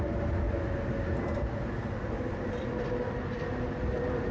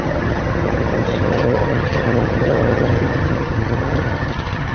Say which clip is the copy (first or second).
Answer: second